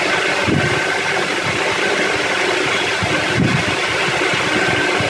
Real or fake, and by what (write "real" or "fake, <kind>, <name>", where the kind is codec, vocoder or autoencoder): real